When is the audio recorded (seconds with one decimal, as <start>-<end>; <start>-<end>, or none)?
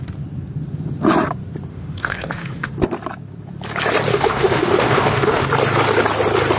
0.0-1.7; 2.7-4.1; 5.5-6.6